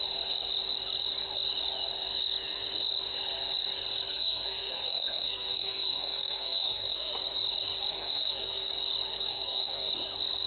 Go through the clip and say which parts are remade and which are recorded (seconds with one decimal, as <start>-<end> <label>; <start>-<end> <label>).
0.0-4.1 recorded; 4.1-7.1 remade; 7.1-7.9 recorded; 7.9-8.7 remade; 8.7-9.1 recorded; 9.1-9.9 remade; 9.9-10.5 recorded